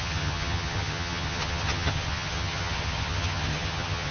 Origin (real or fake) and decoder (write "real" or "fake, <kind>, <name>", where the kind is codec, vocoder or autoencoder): fake, vocoder, HiFi-GAN